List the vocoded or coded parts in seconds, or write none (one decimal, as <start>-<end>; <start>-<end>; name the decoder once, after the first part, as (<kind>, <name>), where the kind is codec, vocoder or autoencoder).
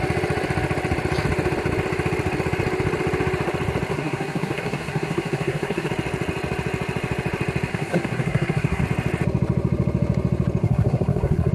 3.9-5.9 (codec, SNAC); 7.7-8.8; 10.6-11.5